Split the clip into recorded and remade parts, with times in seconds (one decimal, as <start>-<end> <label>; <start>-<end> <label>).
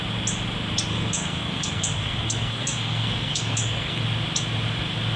0.0-0.9 recorded; 0.9-4.0 remade; 4.0-5.2 recorded